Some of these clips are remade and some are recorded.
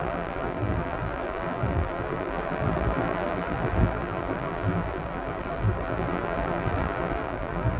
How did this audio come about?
remade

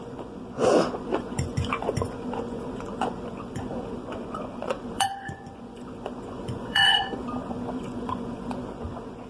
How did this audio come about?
remade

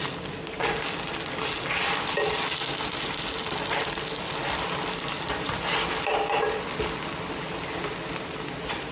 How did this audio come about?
recorded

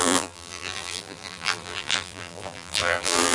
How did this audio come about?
remade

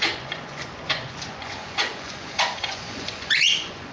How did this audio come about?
remade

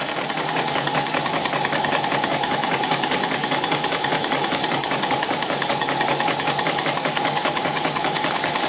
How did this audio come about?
remade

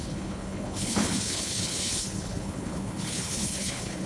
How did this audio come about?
remade